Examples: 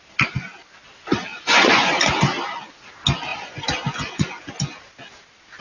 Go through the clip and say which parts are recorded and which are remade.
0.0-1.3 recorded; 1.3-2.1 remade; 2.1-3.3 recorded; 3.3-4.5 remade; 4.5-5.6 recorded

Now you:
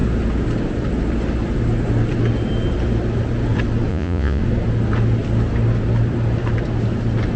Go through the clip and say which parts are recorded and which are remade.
0.0-3.9 recorded; 3.9-4.4 remade; 4.4-7.4 recorded

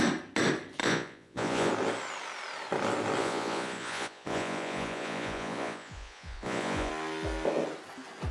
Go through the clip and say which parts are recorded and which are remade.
0.0-0.8 recorded; 0.8-1.7 remade; 1.7-3.2 recorded; 3.2-6.9 remade; 6.9-8.3 recorded

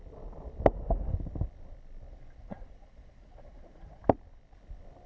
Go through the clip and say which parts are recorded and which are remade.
0.0-2.1 recorded; 2.1-4.0 remade; 4.0-5.1 recorded

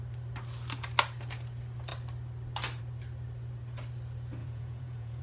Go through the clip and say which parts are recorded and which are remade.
0.0-4.4 recorded; 4.4-5.2 remade

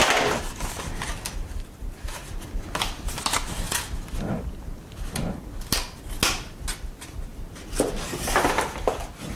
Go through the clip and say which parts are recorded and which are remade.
0.0-9.4 recorded

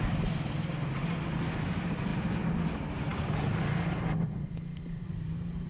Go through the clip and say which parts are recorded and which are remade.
0.0-5.7 recorded

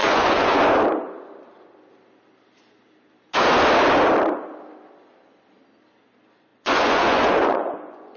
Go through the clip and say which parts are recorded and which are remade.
0.0-0.6 remade; 0.6-6.5 recorded; 6.5-8.2 remade